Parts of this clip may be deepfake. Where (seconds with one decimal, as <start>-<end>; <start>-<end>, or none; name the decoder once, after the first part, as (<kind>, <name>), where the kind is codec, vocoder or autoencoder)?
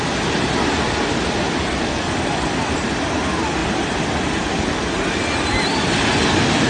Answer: 3.6-4.4 (vocoder, BigVGAN v2)